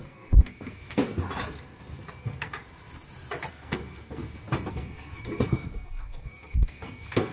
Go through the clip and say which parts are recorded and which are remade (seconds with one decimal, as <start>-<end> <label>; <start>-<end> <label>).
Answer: 0.0-1.0 remade; 1.0-2.2 recorded; 2.2-2.6 remade; 2.6-3.5 recorded; 3.5-4.2 remade; 4.2-4.7 recorded; 4.7-7.3 remade